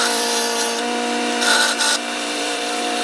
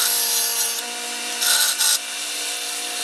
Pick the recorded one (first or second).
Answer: second